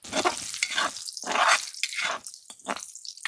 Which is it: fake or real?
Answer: real